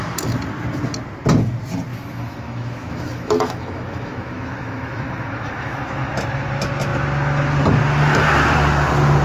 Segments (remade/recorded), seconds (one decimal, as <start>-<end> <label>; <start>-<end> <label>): 0.0-1.9 recorded; 1.9-6.1 remade; 6.1-9.2 recorded